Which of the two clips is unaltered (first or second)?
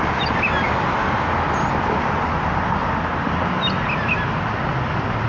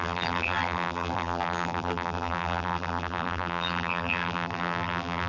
first